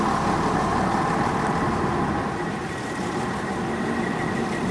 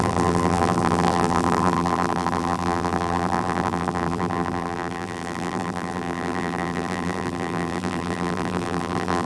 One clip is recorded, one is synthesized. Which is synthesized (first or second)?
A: second